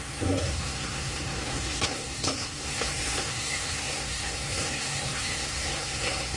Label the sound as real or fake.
fake